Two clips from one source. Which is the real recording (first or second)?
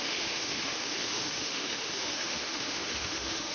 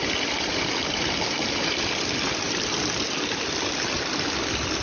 second